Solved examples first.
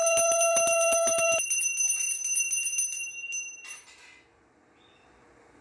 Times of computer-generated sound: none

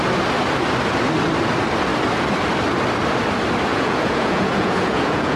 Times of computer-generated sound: 3.7-5.4 (vocoder, Vocos)

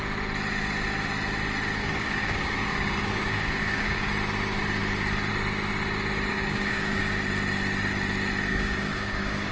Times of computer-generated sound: 1.8-4.1 (codec, DAC); 6.3-7.0; 8.5-9.5

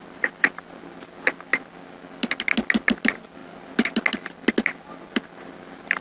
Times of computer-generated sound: none

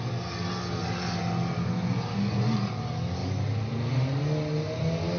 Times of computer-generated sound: none

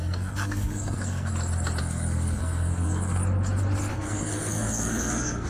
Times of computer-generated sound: 0.0-1.3 (codec, SNAC); 1.8-3.2; 3.9-5.5

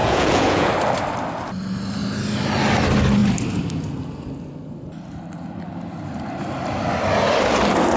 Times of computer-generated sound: 0.0-0.7 (vocoder, Vocos)